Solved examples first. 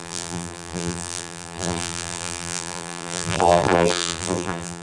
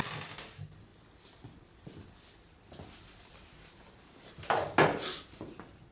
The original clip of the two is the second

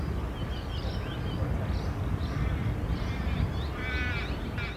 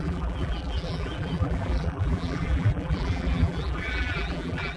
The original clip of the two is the first